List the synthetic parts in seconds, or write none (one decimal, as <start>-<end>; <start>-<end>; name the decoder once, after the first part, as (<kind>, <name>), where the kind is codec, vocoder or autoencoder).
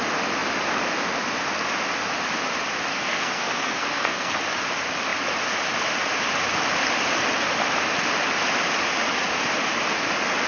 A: 2.9-4.4 (codec, SNAC)